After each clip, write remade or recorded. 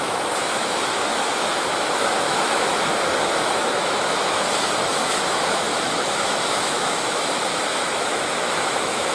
remade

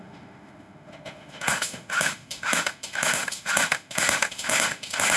remade